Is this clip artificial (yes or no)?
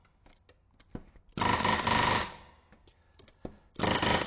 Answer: no